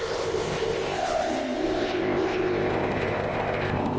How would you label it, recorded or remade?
remade